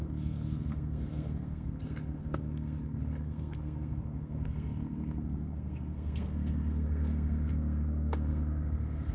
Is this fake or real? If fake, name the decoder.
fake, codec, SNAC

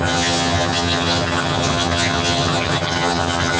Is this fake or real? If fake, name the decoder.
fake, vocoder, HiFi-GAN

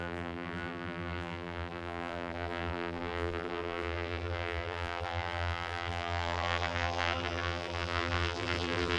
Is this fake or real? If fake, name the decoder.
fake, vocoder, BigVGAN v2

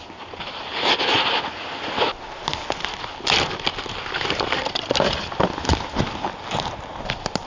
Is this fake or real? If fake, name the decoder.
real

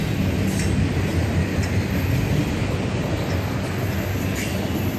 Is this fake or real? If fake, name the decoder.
real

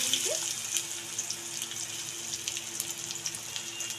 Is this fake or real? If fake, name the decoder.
real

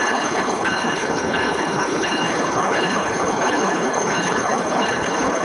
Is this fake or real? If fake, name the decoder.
fake, codec, HILCodec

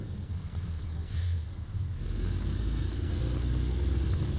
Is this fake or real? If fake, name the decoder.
fake, codec, SNAC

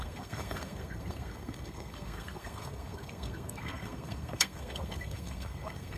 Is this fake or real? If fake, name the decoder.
fake, codec, SNAC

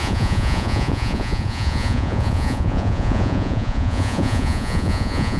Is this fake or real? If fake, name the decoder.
fake, vocoder, Vocos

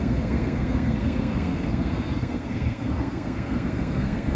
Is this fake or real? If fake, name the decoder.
fake, codec, SNAC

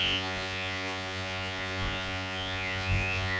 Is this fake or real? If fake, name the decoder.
fake, vocoder, Vocos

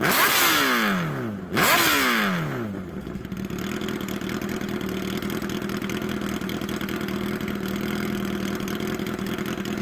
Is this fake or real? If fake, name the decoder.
real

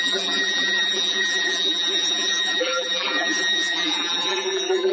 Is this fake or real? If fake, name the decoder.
fake, vocoder, BigVGAN v2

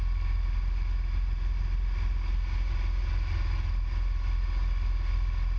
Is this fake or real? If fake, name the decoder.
real